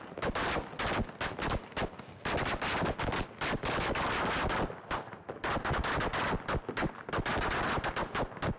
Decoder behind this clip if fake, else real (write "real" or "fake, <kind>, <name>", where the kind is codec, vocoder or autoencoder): real